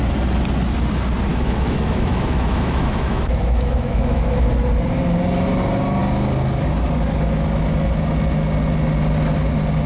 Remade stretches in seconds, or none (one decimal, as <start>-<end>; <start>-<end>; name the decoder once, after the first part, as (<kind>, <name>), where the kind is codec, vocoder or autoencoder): 1.3-4.5 (autoencoder, DAC-VAE)